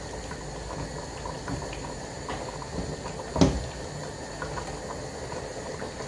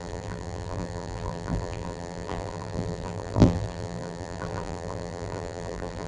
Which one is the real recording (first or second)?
first